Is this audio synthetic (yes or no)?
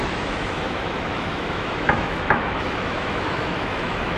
yes